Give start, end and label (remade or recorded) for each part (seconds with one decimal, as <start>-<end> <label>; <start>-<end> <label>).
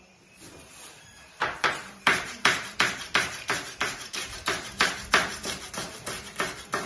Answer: 0.0-1.6 recorded; 1.6-5.7 remade; 5.7-6.9 recorded